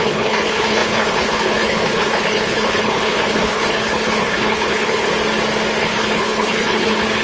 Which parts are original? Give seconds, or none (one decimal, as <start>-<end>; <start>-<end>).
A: 5.1-5.8